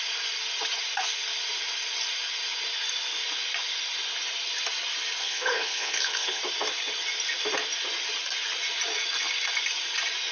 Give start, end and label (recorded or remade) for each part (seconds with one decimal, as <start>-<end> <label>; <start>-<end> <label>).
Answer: 0.0-5.2 recorded; 5.2-6.4 remade; 6.4-10.3 recorded